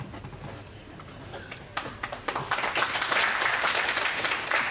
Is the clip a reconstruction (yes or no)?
no